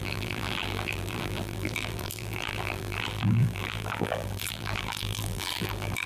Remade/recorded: remade